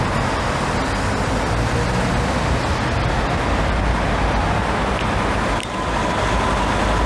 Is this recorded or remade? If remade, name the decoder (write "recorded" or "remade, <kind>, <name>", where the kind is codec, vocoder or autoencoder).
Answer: recorded